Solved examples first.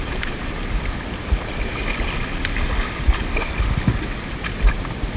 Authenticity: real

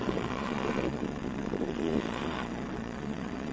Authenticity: fake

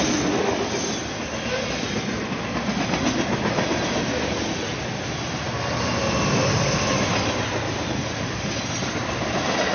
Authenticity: real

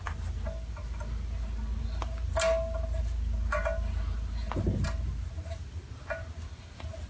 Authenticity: real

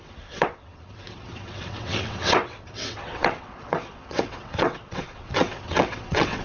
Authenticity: fake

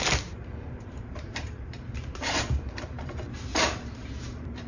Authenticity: fake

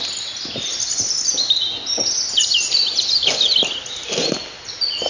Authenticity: real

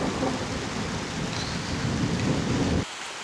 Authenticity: real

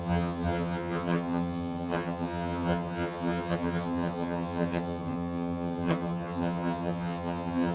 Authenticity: fake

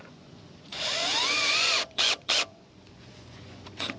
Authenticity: fake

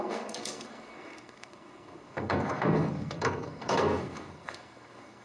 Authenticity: fake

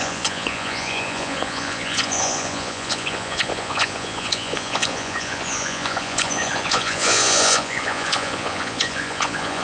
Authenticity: fake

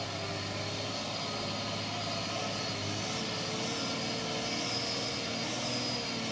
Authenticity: real